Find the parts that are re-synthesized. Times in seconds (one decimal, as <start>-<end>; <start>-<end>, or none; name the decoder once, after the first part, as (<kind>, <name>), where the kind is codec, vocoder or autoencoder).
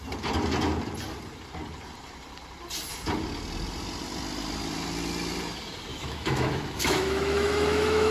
5.9-8.1 (autoencoder, DAC-VAE)